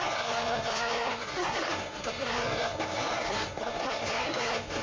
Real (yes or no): no